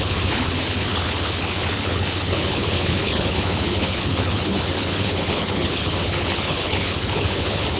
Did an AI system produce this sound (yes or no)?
yes